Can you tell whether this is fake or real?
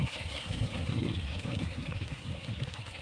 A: fake